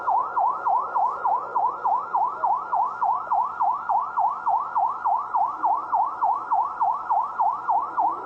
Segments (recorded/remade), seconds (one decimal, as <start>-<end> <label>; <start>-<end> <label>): 0.0-8.3 recorded